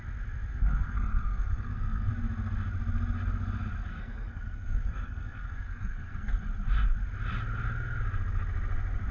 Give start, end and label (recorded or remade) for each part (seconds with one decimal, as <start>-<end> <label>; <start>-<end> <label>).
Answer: 0.0-0.5 recorded; 0.5-2.1 remade; 2.1-3.9 recorded; 3.9-6.4 remade; 6.4-9.1 recorded